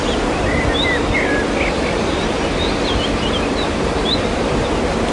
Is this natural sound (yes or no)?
yes